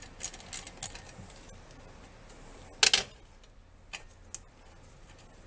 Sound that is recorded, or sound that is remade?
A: recorded